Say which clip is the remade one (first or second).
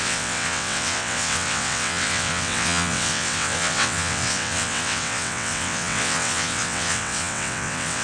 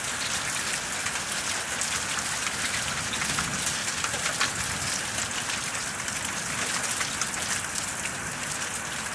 first